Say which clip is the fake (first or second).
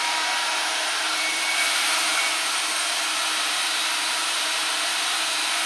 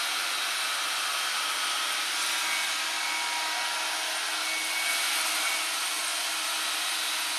first